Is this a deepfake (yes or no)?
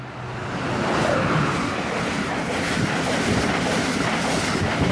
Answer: no